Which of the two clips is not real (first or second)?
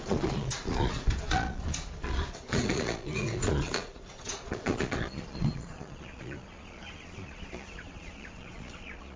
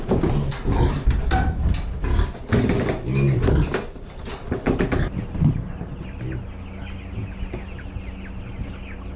first